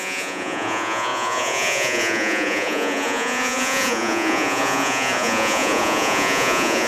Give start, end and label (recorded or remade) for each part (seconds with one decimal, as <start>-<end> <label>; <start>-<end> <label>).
0.0-6.9 remade